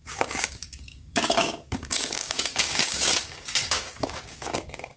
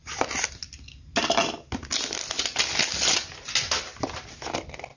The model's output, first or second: first